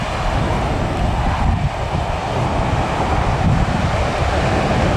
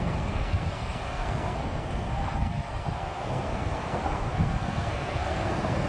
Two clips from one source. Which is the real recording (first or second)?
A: first